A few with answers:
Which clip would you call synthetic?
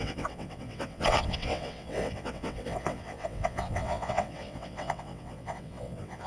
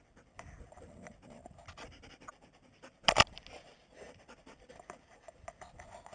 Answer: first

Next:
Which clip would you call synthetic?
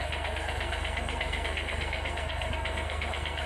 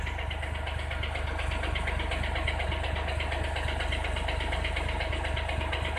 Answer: first